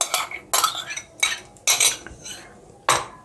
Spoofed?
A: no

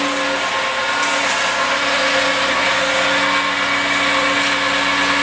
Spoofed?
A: no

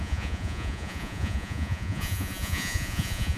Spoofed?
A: yes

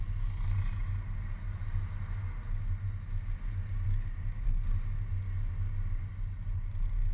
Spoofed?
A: no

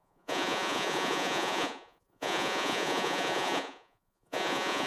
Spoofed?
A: yes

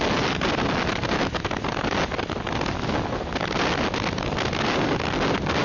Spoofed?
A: no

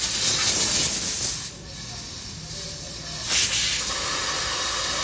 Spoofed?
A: no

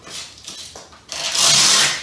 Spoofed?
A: no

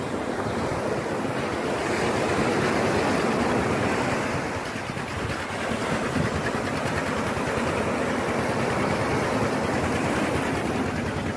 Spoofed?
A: no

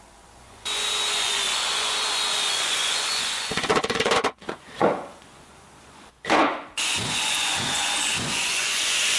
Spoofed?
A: yes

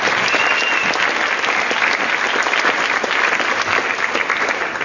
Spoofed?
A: no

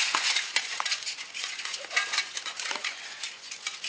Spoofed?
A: yes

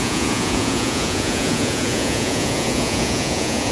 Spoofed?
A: yes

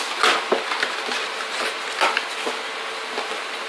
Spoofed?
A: no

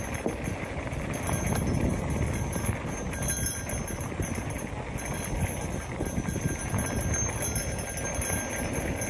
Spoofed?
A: no